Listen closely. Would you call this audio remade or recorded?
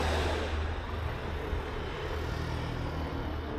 recorded